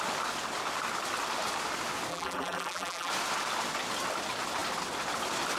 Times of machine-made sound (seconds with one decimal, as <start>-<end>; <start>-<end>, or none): 2.1-3.1